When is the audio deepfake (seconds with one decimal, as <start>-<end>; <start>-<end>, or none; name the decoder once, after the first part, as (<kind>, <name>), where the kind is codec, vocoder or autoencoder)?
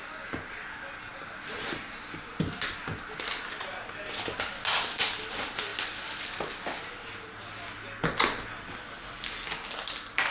none